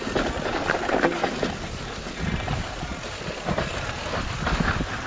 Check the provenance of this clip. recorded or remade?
recorded